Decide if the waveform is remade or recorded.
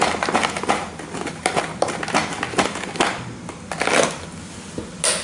recorded